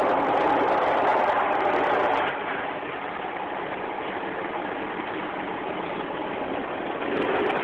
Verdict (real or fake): real